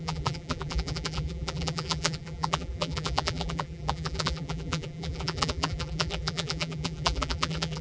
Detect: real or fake fake